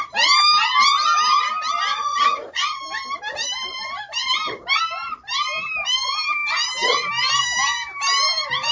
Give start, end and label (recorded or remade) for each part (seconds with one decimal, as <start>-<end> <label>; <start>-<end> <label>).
0.0-1.9 recorded; 1.9-2.8 remade; 2.8-8.7 recorded